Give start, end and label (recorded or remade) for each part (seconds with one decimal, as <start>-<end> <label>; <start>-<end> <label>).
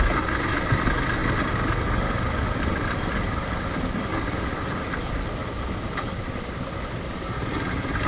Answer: 0.0-8.1 recorded